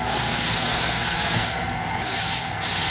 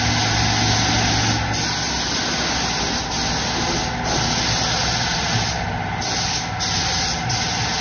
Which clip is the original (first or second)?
second